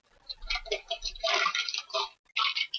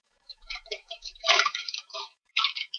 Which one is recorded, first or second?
first